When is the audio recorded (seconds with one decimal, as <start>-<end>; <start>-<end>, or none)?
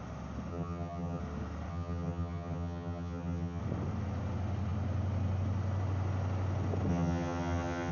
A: 0.0-0.5; 1.2-1.7; 3.6-6.9